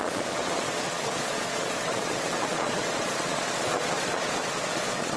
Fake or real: fake